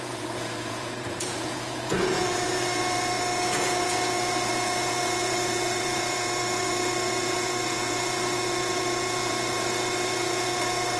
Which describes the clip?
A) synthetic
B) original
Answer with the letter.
A